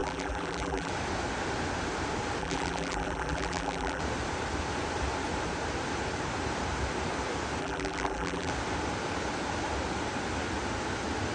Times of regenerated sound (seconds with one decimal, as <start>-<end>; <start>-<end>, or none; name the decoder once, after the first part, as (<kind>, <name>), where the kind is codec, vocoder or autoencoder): 0.0-0.9 (vocoder, BigVGAN v2); 2.4-4.0; 7.6-8.5